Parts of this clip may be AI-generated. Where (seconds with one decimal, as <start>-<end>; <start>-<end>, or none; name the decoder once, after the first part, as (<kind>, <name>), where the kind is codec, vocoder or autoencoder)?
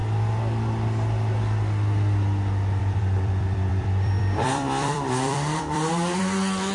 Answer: 2.8-6.7 (vocoder, BigVGAN v2)